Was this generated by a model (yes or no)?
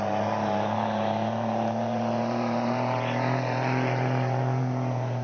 no